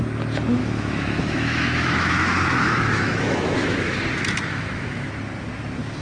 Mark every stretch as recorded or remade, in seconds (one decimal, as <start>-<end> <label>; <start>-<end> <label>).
0.0-0.6 recorded; 0.6-4.0 remade; 4.0-4.5 recorded; 4.5-5.1 remade; 5.1-6.0 recorded